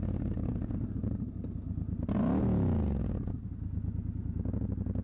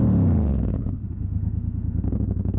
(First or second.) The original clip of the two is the first